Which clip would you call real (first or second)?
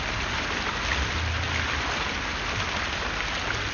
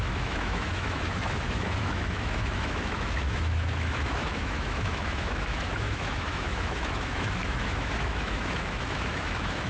first